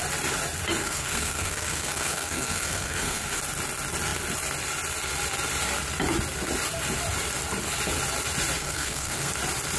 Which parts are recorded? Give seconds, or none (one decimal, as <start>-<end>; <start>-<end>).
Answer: 0.0-0.8; 3.4-8.6; 9.3-9.8